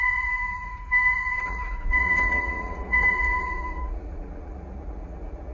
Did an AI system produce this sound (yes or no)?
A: yes